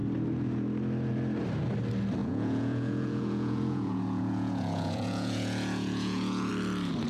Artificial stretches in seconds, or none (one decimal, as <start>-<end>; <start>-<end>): 2.2-6.5